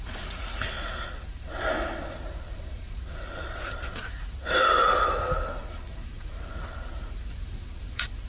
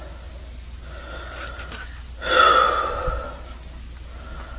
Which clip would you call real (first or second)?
second